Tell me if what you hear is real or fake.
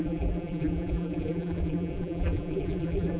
fake